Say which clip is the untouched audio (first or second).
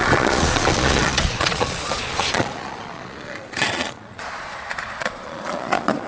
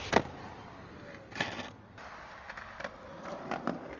second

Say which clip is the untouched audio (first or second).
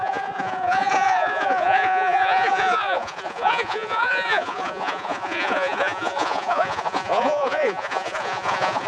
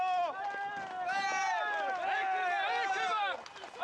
second